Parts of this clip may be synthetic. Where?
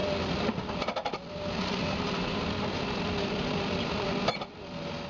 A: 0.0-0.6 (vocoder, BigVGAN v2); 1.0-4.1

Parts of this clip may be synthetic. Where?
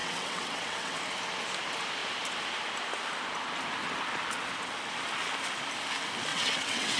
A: 0.0-1.0 (vocoder, WaveNeXt); 6.3-7.0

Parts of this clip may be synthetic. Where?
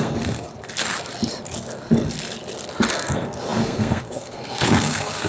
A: 0.0-0.5 (codec, SNAC); 2.9-5.3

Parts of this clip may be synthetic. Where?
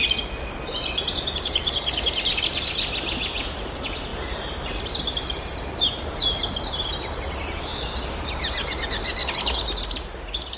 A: 0.7-1.7 (vocoder, BigVGAN v2)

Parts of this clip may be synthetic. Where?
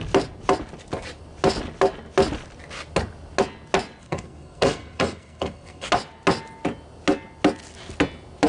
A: 4.0-5.9 (codec, SNAC)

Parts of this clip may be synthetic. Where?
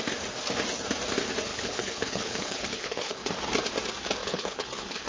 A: 1.5-3.3 (codec, HILCodec); 4.2-5.1